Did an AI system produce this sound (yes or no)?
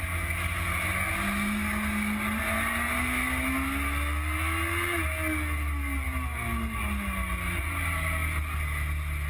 no